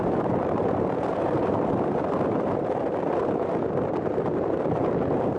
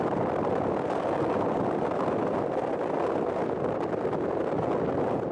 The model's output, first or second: first